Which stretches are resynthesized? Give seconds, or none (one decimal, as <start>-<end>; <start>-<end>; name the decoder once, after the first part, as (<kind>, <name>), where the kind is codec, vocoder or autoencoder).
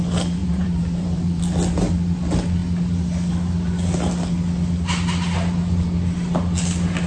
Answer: 0.4-1.4 (vocoder, BigVGAN v2)